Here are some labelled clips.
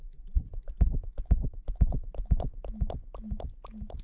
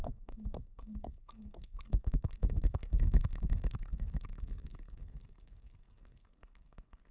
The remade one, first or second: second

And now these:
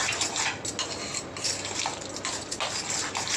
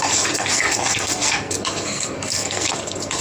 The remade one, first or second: second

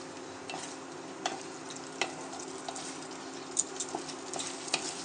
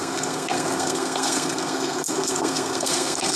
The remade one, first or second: second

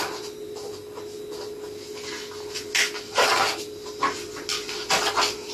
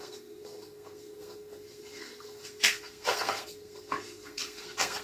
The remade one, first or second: second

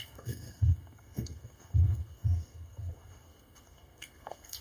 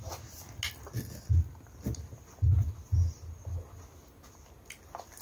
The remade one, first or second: first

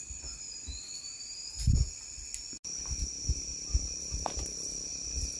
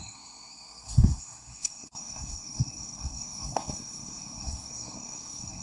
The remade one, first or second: second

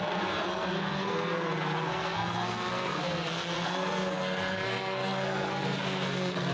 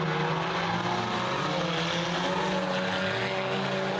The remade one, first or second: first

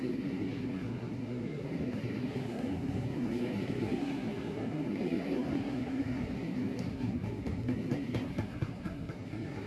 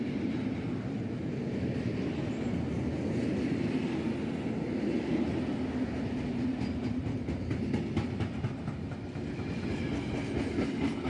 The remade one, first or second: first